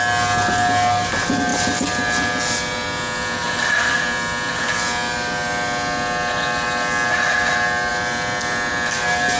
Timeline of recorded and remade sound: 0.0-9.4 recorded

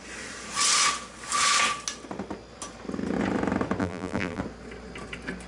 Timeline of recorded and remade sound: 0.0-3.8 recorded; 3.8-4.4 remade; 4.4-5.5 recorded

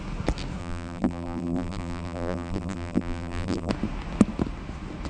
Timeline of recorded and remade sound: 0.0-0.6 recorded; 0.6-3.7 remade; 3.7-5.1 recorded

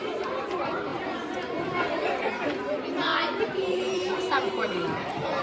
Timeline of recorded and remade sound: 0.0-0.9 remade; 0.9-2.3 recorded; 2.3-5.4 remade